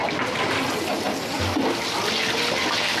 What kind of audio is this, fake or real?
real